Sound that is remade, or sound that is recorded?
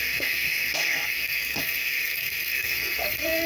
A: remade